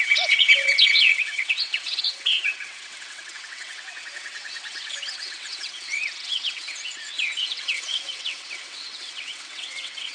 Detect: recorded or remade remade